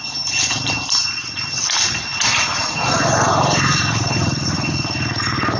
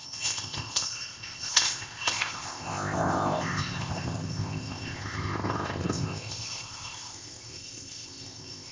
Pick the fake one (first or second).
second